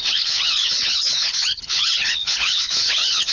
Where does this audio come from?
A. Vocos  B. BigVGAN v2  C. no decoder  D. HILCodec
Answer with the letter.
D